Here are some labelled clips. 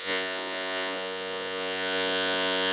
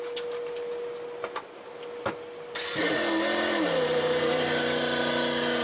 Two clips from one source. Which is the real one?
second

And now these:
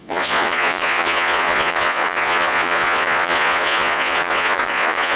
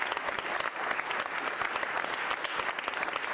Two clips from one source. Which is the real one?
second